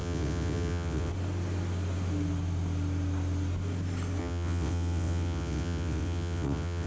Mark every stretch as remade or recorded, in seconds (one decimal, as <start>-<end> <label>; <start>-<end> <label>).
0.0-1.1 remade; 1.1-4.2 recorded; 4.2-6.9 remade